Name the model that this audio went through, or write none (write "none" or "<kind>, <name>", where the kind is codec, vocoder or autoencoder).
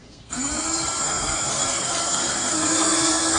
codec, SNAC